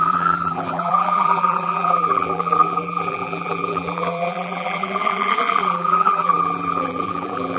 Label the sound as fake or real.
fake